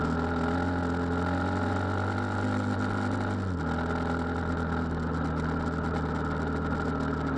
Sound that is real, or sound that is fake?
real